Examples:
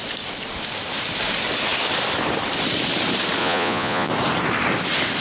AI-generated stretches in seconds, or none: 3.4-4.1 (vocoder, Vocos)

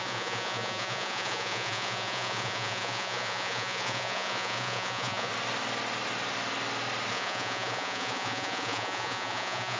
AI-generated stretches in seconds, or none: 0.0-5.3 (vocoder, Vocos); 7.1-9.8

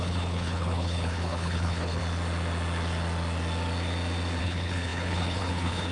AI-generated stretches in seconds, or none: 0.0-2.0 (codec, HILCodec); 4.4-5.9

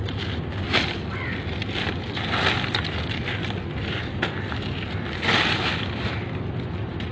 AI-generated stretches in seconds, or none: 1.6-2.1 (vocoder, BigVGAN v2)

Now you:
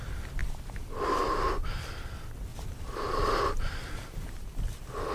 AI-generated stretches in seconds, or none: 2.5-5.1 (vocoder, BigVGAN v2)

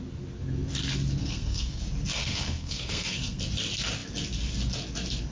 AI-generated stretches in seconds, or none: 1.2-1.8 (codec, SNAC); 2.2-3.4

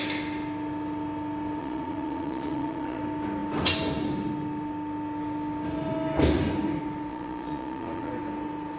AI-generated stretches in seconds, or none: 1.6-3.0 (vocoder, Vocos); 7.1-8.1